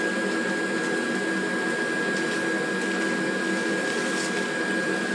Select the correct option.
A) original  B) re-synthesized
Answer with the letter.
A